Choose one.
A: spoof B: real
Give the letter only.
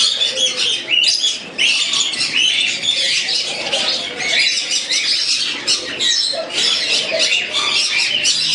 B